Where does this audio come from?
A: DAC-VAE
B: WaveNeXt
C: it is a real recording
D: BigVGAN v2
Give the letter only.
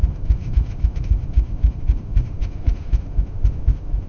A